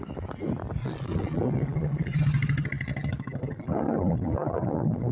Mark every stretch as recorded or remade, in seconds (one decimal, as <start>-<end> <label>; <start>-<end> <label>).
0.0-0.8 recorded; 0.8-2.2 remade; 2.2-3.5 recorded; 3.5-5.1 remade